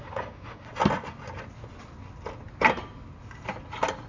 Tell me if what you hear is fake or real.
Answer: real